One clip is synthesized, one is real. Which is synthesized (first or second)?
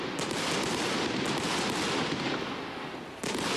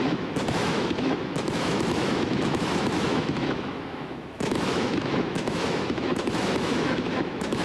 second